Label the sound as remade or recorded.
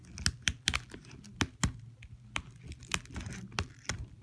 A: recorded